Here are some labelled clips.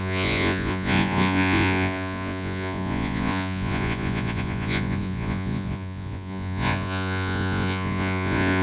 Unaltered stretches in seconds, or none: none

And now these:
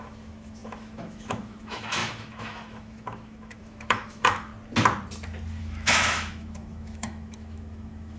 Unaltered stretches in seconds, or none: 4.5-5.6

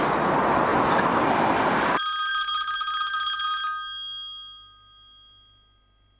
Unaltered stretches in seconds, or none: 0.0-0.7; 1.2-2.3; 3.4-6.2

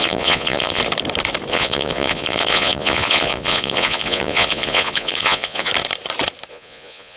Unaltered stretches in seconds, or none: 0.8-1.5; 5.7-6.5

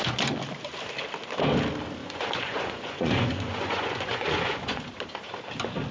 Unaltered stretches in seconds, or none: 0.0-2.0; 4.9-5.9

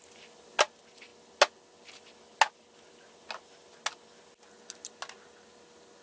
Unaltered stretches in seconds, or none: 0.0-6.0

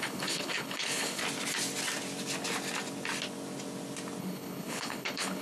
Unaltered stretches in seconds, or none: 1.2-4.2